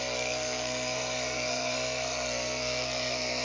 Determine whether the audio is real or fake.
fake